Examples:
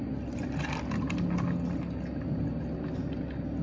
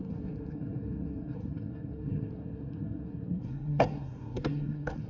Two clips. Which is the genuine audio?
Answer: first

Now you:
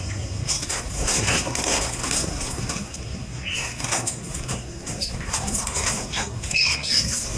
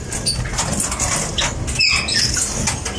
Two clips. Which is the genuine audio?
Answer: second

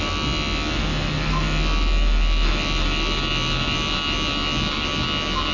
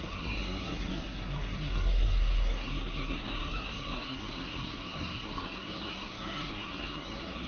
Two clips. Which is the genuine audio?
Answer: first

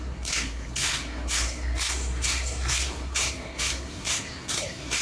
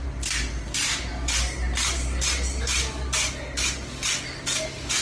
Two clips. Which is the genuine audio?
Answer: second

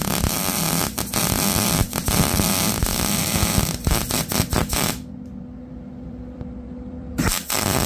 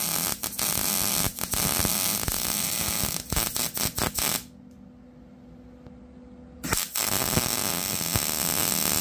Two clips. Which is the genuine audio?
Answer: second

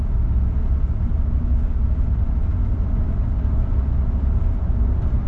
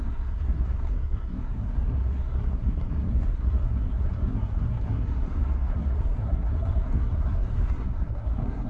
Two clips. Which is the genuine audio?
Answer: first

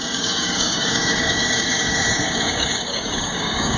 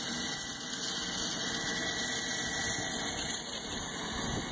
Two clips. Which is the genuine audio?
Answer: second